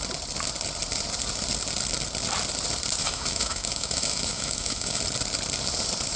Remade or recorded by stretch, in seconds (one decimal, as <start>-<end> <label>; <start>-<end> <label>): 0.0-3.0 recorded; 3.0-5.0 remade; 5.0-6.2 recorded